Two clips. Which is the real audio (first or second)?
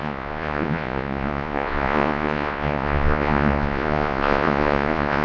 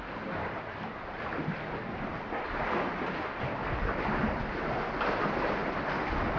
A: second